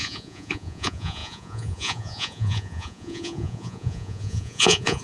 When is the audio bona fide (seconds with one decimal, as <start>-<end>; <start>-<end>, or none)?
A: none